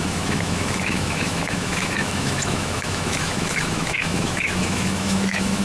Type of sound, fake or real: fake